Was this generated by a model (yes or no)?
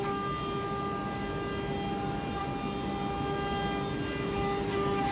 no